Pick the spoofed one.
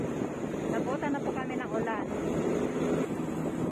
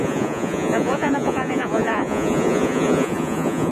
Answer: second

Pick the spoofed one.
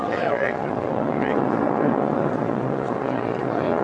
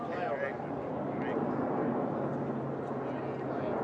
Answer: first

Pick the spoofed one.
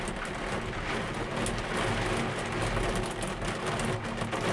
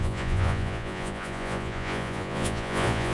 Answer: second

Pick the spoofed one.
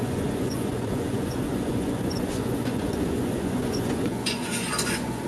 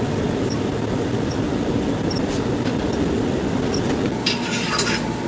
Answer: first